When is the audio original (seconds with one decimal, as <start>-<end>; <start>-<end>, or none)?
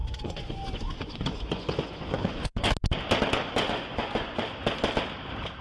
2.7-3.4; 4.4-5.6